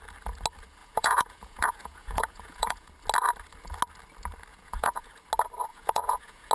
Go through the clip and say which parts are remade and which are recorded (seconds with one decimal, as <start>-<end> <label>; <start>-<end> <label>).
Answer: 0.0-0.8 recorded; 0.8-2.9 remade; 2.9-4.5 recorded; 4.5-5.1 remade; 5.1-5.7 recorded; 5.7-6.5 remade